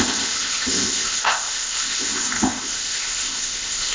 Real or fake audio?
fake